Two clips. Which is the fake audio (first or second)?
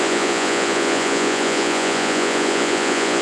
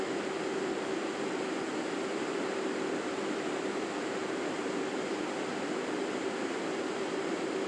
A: first